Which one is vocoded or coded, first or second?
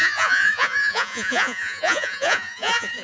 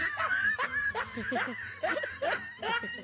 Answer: first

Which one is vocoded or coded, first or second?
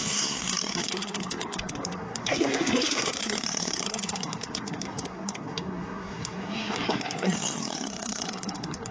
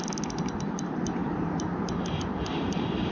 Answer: first